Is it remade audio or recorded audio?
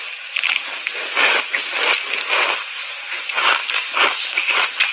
recorded